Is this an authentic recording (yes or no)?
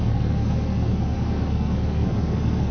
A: no